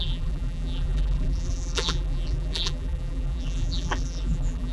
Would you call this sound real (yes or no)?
no